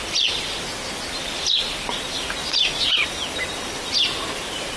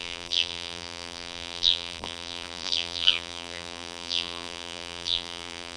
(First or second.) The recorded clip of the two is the first